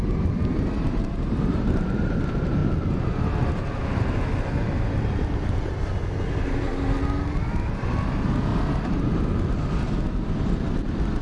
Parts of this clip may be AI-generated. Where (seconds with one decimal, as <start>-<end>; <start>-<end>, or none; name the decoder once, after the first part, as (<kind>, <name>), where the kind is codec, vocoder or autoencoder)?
0.5-2.2 (vocoder, BigVGAN v2); 8.5-9.2